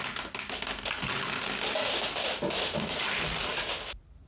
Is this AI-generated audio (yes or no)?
no